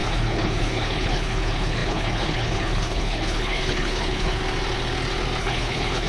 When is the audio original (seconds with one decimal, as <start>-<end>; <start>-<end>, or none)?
4.4-5.4